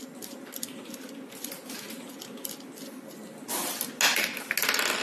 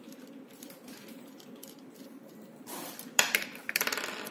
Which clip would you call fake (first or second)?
second